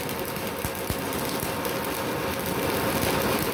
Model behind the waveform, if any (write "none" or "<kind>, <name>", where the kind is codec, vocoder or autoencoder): none